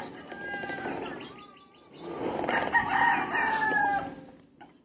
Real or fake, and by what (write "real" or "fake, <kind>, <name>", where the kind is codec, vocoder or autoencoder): real